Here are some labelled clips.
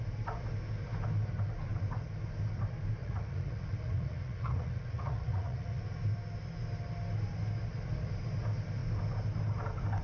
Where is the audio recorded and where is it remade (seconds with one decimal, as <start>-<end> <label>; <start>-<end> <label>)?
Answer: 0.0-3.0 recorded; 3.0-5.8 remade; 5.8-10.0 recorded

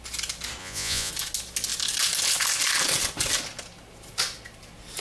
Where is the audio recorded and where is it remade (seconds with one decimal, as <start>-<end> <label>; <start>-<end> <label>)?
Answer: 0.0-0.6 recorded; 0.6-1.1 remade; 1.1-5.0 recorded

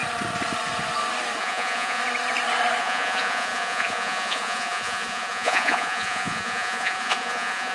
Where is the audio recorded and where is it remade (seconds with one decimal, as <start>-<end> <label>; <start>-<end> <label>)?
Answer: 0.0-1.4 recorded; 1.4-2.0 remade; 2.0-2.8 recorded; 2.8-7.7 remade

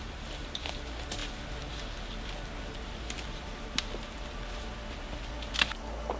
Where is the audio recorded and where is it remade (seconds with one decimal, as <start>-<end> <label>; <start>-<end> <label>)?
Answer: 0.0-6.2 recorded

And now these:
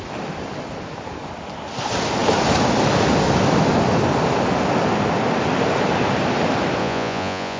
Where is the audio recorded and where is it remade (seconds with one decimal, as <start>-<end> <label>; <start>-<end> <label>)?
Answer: 0.0-6.8 recorded; 6.8-7.6 remade

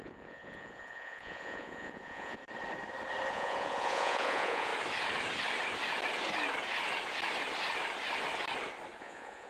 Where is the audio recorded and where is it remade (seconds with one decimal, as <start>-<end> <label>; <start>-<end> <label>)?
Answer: 0.0-2.4 remade; 2.4-3.3 recorded; 3.3-4.7 remade; 4.7-9.0 recorded; 9.0-9.5 remade